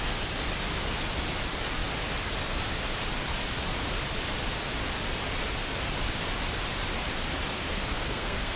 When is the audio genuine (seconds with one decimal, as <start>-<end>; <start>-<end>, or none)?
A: 0.0-7.6